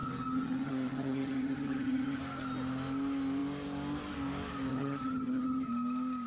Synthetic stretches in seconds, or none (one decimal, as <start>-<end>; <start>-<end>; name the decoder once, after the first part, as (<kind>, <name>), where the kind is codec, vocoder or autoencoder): 0.0-2.2 (vocoder, HiFi-GAN); 4.7-5.7